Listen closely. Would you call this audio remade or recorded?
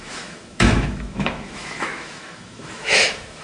remade